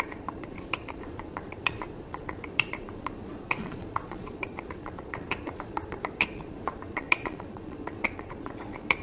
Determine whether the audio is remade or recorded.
remade